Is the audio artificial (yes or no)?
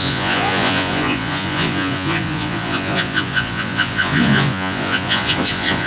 yes